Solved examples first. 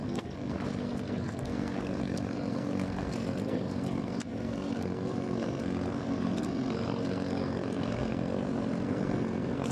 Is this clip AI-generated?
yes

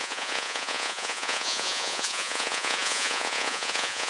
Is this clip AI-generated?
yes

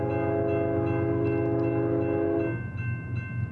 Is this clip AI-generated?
no